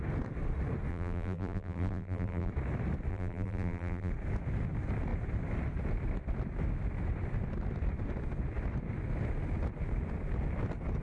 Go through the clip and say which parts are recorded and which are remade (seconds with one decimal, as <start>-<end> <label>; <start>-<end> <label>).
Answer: 0.0-0.9 recorded; 0.9-2.5 remade; 2.5-3.1 recorded; 3.1-4.1 remade; 4.1-11.0 recorded

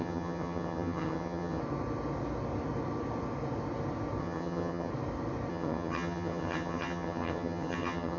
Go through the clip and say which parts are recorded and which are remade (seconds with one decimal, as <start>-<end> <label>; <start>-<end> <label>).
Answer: 0.0-1.6 remade; 1.6-4.2 recorded; 4.2-4.9 remade; 4.9-5.5 recorded; 5.5-8.2 remade